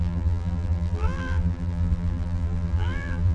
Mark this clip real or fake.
fake